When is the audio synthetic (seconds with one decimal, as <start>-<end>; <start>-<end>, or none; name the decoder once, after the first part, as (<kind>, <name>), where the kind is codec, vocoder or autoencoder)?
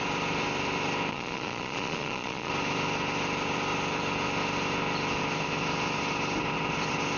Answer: 1.1-2.5 (vocoder, Vocos)